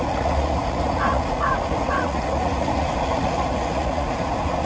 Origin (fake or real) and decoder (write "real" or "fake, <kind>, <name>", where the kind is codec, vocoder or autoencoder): fake, vocoder, Vocos